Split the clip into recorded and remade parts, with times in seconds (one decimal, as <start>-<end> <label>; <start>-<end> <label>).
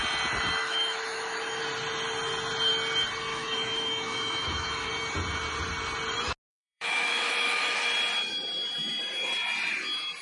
0.0-0.6 recorded; 0.6-1.6 remade; 1.6-3.3 recorded; 3.3-4.9 remade; 4.9-6.5 recorded; 6.5-7.9 remade; 7.9-10.2 recorded